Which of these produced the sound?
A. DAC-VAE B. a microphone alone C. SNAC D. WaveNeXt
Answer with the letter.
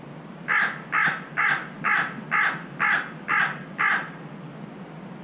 B